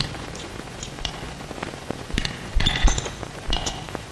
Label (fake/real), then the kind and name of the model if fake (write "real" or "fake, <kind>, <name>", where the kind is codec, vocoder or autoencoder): fake, vocoder, Vocos